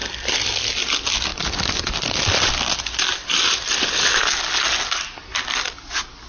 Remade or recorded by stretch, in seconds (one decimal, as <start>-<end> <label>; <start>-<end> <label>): 0.0-6.3 recorded